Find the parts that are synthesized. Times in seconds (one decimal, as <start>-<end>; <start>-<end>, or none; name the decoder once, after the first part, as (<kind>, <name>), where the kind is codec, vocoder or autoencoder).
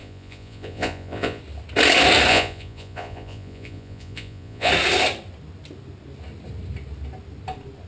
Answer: 0.0-1.4 (vocoder, Vocos); 2.3-4.7